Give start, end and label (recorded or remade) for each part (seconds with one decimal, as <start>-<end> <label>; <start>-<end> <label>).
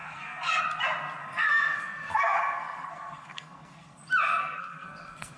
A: 0.0-0.6 remade; 0.6-1.2 recorded; 1.2-4.0 remade; 4.0-4.4 recorded; 4.4-5.4 remade